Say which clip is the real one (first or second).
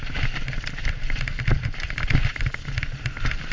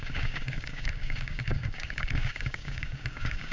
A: first